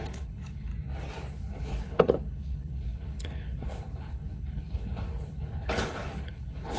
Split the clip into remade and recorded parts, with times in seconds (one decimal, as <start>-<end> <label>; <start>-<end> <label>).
0.0-0.7 remade; 0.7-1.3 recorded; 1.3-6.8 remade